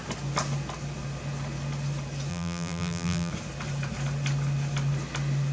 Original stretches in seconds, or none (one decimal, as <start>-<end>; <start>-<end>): 0.0-2.3; 3.3-5.5

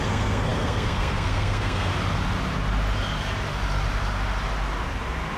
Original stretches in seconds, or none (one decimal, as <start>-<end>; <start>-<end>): 1.9-5.4

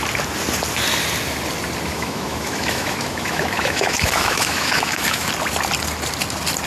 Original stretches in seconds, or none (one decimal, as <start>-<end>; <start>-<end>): 0.0-1.9; 5.3-6.7

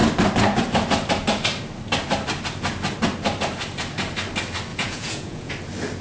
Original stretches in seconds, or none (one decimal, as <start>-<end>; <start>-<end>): 0.0-4.7; 5.5-6.0

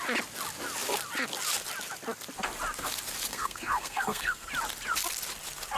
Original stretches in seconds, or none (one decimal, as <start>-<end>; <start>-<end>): 0.0-3.3; 4.5-5.8

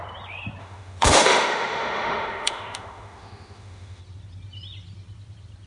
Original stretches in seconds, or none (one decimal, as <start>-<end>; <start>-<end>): 0.0-0.6; 4.0-5.7